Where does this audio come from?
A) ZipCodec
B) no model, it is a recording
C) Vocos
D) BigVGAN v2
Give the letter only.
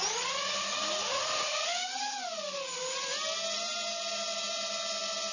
B